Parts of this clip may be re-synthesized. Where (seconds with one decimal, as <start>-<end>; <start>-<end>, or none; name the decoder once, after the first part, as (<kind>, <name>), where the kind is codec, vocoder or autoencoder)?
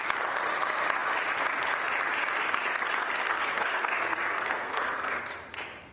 3.2-5.2 (codec, SNAC)